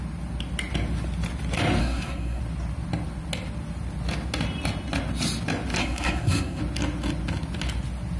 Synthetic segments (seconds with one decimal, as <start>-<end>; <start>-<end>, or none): 1.8-2.4; 5.8-6.6